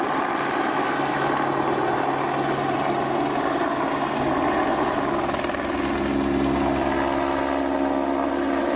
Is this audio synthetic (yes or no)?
no